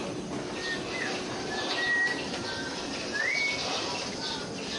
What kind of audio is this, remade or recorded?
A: recorded